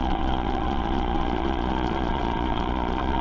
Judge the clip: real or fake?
fake